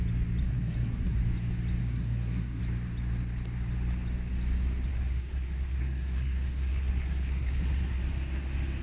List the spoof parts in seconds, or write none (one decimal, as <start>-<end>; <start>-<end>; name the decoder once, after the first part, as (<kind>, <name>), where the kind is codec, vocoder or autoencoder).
0.4-1.2 (codec, SNAC); 1.8-2.6; 4.9-8.0